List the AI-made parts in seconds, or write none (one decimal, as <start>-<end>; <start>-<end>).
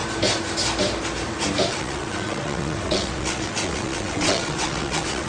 1.7-5.3